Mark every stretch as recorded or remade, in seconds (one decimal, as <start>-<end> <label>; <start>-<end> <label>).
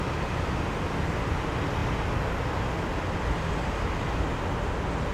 0.0-5.1 recorded